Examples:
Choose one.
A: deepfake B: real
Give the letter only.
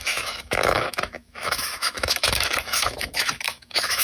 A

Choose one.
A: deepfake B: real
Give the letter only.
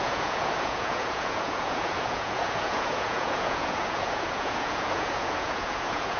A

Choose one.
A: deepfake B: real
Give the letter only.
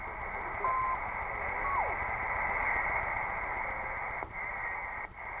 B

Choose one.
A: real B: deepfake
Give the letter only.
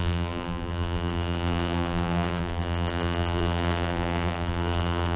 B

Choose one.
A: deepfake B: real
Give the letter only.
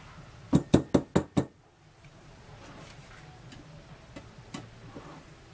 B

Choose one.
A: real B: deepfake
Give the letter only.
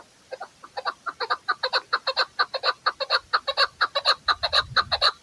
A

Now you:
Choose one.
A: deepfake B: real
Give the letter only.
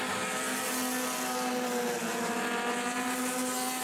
B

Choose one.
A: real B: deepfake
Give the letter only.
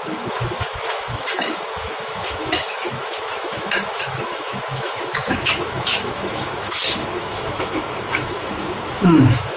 B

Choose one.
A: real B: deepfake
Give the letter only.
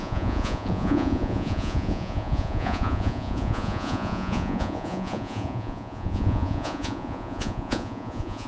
B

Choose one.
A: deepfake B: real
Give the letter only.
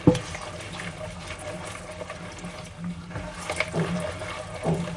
B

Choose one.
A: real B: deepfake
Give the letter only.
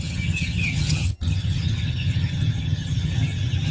B